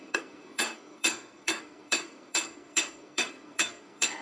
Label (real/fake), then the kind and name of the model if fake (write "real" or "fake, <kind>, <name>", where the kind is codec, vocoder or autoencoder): fake, codec, SNAC